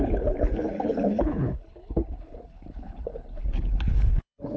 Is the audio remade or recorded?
remade